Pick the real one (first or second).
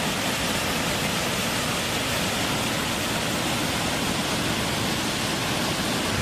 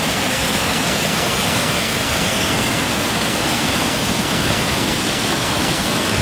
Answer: first